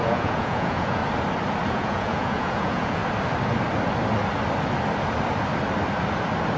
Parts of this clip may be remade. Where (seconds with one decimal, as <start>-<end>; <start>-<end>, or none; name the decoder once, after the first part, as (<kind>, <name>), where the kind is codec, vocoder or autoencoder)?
0.0-1.0 (vocoder, Vocos); 1.7-3.0